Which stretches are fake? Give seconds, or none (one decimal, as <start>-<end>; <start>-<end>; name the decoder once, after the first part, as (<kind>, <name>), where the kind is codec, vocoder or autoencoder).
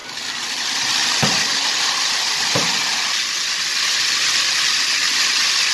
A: 0.0-2.9 (vocoder, BigVGAN v2); 5.0-5.7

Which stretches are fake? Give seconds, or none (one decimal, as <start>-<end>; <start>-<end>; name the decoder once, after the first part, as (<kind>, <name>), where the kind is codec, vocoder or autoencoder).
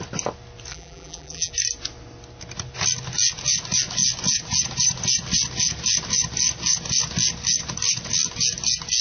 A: 0.7-1.5 (vocoder, BigVGAN v2)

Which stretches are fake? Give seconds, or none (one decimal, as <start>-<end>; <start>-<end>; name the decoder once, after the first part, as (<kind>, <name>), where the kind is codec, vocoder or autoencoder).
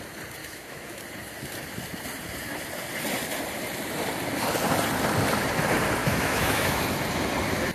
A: 0.4-1.0 (autoencoder, DAC-VAE); 6.0-6.8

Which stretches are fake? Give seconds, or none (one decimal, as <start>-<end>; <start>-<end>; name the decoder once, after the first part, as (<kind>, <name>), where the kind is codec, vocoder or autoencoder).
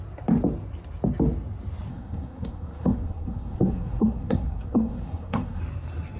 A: 1.9-5.6 (codec, SNAC)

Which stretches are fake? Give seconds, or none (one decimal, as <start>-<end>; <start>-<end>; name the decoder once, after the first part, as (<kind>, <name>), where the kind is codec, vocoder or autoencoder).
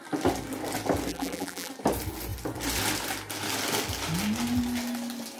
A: 1.1-1.7 (vocoder, BigVGAN v2)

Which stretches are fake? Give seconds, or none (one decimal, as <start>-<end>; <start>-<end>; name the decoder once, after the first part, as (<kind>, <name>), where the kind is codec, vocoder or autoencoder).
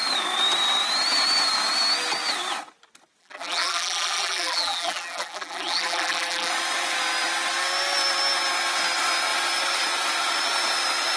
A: 3.2-6.5 (vocoder, BigVGAN v2)